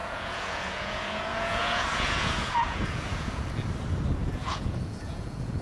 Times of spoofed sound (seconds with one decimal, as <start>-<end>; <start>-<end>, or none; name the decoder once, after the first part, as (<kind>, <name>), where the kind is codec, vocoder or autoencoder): 0.0-3.4 (vocoder, Vocos); 4.2-5.6